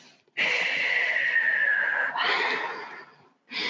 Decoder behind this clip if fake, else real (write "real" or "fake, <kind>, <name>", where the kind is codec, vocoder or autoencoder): real